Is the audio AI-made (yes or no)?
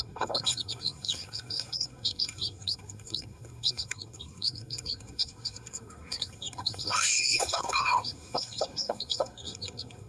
yes